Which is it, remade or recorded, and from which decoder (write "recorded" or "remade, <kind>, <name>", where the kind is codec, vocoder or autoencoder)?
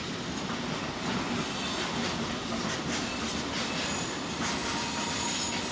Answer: recorded